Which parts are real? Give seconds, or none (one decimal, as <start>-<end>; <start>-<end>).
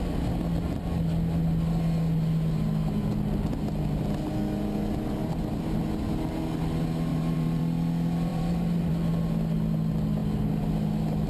0.0-7.1; 7.6-8.3; 8.9-11.3